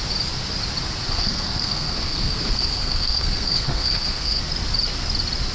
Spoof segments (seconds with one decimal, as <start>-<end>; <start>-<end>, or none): 1.1-4.4